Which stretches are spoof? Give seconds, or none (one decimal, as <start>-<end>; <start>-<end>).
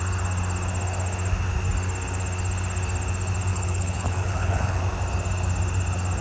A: 3.5-4.8